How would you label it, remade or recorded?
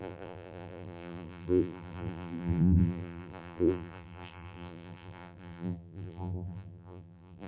remade